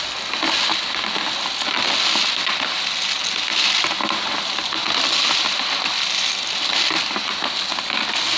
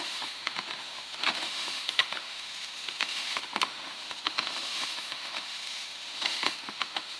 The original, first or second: first